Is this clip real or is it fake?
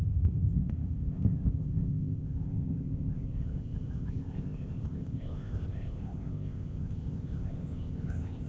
fake